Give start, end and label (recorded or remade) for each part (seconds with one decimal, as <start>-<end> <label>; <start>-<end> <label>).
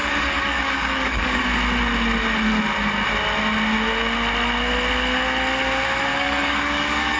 0.0-1.4 remade; 1.4-6.1 recorded; 6.1-7.2 remade